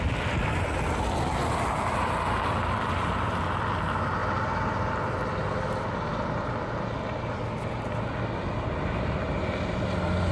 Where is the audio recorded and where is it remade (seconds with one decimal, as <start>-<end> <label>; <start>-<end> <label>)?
0.0-10.3 recorded

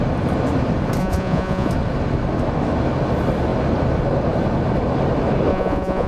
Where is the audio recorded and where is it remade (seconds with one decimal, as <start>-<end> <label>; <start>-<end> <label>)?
0.0-1.0 recorded; 1.0-1.7 remade; 1.7-5.5 recorded; 5.5-6.1 remade

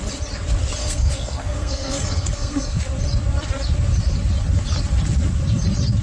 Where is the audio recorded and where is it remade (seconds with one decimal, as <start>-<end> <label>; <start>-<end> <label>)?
0.0-0.8 recorded; 0.8-2.8 remade; 2.8-6.0 recorded

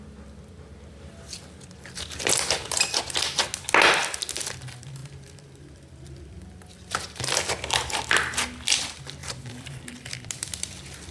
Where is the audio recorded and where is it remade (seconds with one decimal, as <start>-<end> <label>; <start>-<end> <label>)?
0.0-5.0 recorded; 5.0-7.5 remade; 7.5-9.2 recorded; 9.2-10.7 remade; 10.7-11.1 recorded

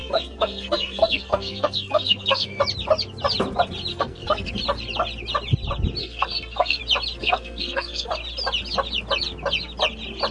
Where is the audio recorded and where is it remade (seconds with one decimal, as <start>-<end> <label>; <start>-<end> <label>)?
0.0-2.6 remade; 2.6-3.9 recorded; 3.9-4.5 remade; 4.5-6.0 recorded; 6.0-6.8 remade; 6.8-7.2 recorded; 7.2-8.1 remade; 8.1-10.3 recorded

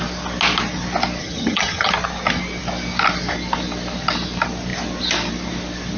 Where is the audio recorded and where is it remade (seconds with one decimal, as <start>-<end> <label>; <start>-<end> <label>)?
0.0-1.2 recorded; 1.2-1.9 remade; 1.9-6.0 recorded